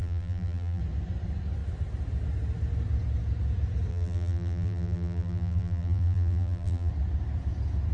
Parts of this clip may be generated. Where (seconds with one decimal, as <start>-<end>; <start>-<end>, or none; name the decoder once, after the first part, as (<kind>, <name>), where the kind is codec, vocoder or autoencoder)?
0.0-0.8 (vocoder, BigVGAN v2); 3.9-6.9